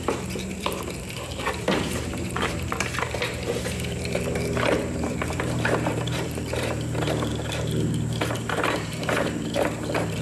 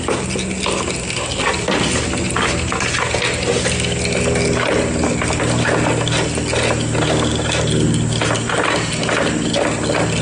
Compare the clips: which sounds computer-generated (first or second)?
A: first